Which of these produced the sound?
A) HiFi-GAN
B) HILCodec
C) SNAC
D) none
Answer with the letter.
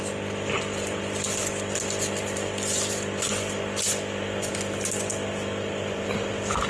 D